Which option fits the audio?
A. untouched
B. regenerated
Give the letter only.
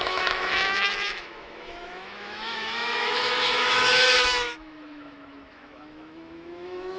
B